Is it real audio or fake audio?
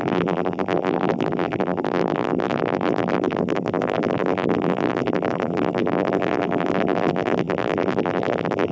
fake